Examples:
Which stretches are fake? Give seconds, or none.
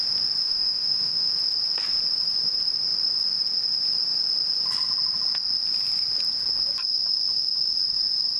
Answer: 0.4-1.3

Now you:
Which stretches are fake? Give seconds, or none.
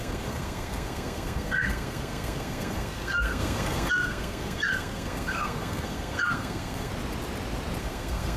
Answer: 0.0-6.9; 7.8-8.4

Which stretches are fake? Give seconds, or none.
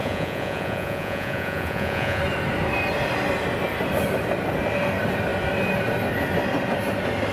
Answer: 0.0-2.2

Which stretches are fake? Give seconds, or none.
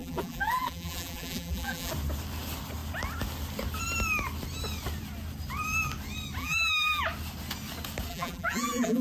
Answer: 0.0-1.9; 6.4-7.0; 8.1-9.0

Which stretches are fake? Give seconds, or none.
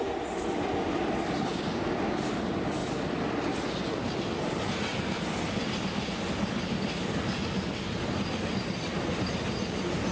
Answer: none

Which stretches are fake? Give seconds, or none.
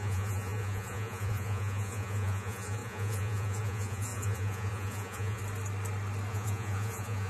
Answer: 0.0-5.4; 6.3-7.3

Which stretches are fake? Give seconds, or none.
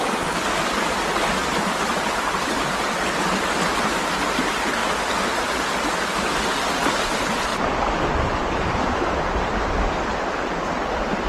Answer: 1.4-3.4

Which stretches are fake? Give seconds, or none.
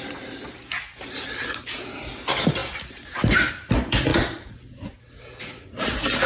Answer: none